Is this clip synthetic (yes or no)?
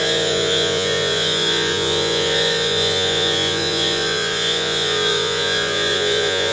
yes